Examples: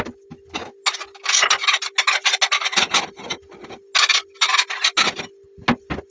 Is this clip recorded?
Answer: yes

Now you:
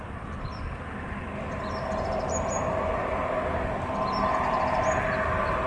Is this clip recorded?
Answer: yes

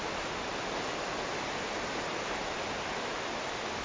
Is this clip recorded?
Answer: yes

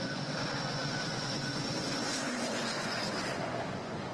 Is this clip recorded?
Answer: no